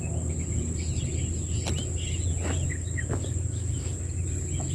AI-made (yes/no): no